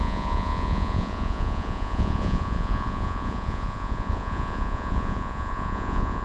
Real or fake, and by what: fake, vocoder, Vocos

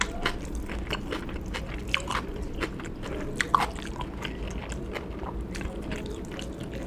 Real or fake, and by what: real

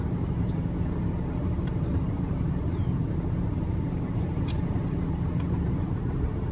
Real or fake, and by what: fake, vocoder, BigVGAN v2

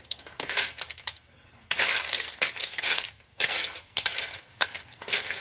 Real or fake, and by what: fake, codec, SNAC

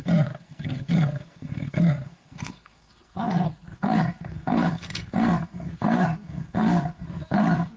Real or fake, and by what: fake, codec, SNAC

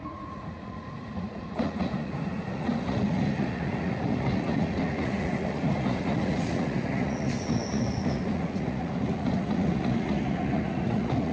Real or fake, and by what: fake, vocoder, Vocos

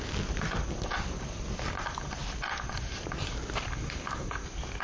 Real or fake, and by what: real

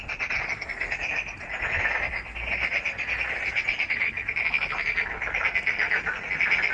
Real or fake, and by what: real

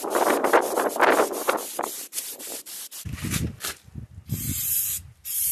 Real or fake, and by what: real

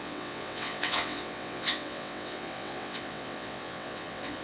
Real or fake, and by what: fake, vocoder, WaveNeXt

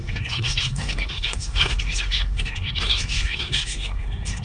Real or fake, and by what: fake, codec, SNAC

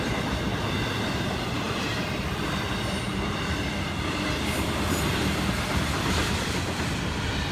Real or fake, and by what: fake, vocoder, BigVGAN v2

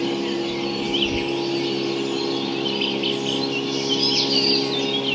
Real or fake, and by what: real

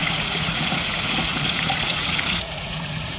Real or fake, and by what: fake, vocoder, Vocos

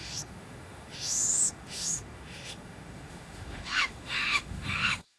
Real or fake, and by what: fake, autoencoder, DAC-VAE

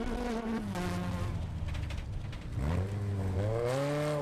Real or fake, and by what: real